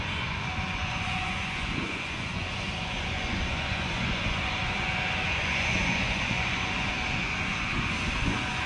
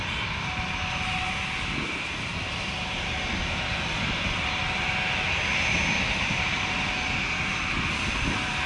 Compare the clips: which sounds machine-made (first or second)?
first